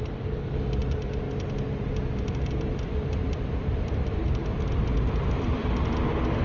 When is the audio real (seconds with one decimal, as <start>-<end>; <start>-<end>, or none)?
0.8-2.2; 4.0-4.6

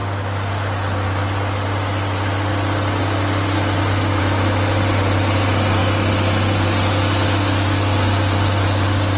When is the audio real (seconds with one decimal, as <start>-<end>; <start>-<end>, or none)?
0.0-9.2

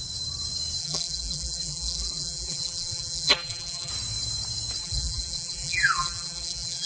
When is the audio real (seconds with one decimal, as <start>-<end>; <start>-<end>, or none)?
0.0-0.8; 3.9-4.8

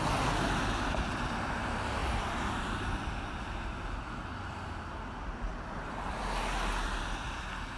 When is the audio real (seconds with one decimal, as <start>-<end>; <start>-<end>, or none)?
0.0-5.5; 6.2-7.8

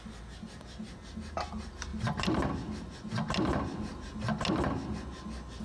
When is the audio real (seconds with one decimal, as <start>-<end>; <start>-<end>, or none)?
0.0-5.6

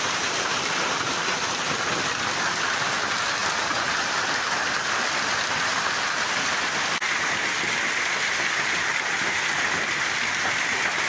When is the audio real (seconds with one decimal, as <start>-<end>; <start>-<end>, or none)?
none

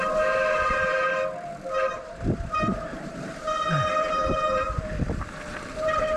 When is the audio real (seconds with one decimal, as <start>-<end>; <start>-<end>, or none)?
none

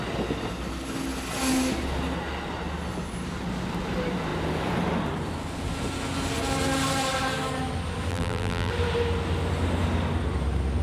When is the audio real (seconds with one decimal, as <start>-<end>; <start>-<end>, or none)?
0.0-8.1; 8.7-10.8